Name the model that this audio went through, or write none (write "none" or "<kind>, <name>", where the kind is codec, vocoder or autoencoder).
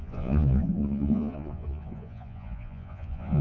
vocoder, Vocos